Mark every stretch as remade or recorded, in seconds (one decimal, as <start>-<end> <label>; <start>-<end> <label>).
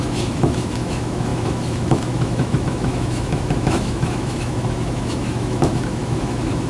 0.0-6.7 remade